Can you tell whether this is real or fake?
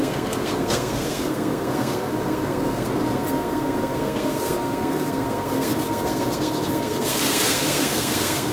fake